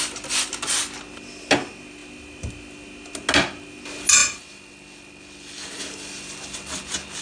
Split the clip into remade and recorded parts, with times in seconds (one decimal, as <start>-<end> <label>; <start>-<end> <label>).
0.0-7.2 recorded